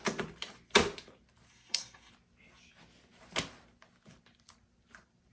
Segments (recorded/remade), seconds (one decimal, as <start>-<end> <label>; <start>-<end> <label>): 0.0-1.5 recorded; 1.5-2.1 remade; 2.1-5.3 recorded